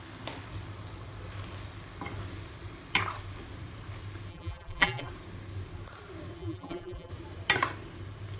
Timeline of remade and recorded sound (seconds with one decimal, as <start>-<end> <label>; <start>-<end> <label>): 0.0-4.3 recorded; 4.3-5.1 remade; 5.1-6.4 recorded; 6.4-7.1 remade; 7.1-8.4 recorded